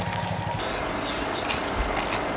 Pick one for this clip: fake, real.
real